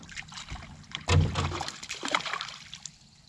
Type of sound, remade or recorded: remade